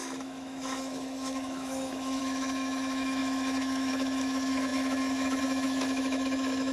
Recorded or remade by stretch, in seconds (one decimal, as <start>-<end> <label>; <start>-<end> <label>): 0.0-6.7 remade